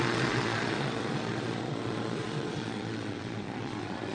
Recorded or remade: remade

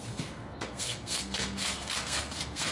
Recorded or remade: remade